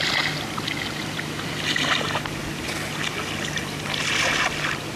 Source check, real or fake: real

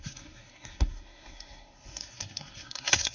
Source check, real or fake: fake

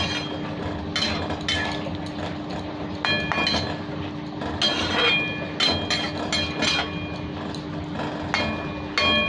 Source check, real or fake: real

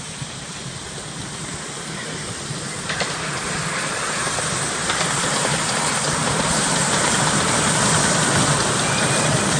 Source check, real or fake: real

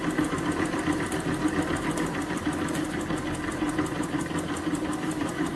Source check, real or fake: real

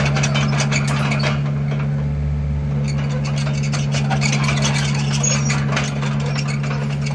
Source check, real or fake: real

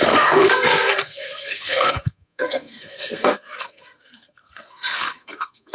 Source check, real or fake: fake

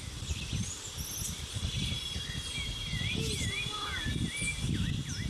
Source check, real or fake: real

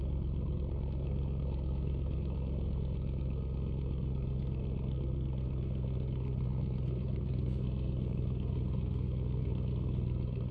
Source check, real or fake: fake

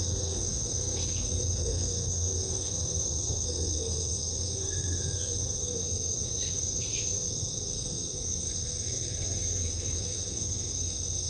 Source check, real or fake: fake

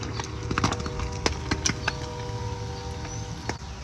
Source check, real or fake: real